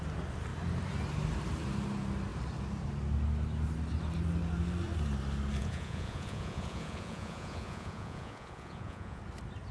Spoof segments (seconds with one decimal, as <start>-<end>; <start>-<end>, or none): 5.6-9.2